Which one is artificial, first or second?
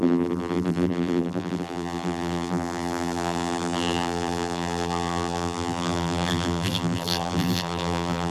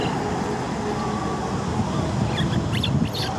first